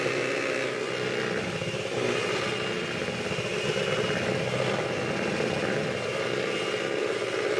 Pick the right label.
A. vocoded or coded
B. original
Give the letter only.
B